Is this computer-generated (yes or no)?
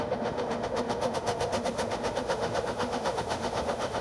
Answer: yes